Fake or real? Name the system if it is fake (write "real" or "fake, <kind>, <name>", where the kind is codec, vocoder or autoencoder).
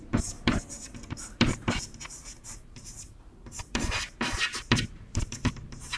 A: fake, vocoder, BigVGAN v2